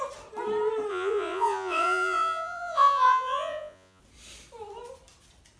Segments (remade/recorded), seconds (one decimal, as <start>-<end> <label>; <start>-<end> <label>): 0.0-0.9 recorded; 0.9-4.0 remade; 4.0-5.6 recorded